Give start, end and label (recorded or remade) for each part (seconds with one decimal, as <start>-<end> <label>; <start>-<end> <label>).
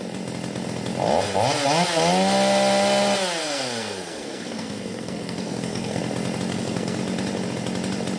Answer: 0.0-3.4 recorded; 3.4-6.0 remade; 6.0-6.5 recorded; 6.5-7.0 remade; 7.0-8.2 recorded